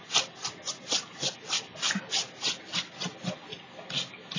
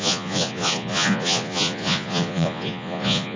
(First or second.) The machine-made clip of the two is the second